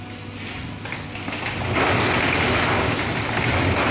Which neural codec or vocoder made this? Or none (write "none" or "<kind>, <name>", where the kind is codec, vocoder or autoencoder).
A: none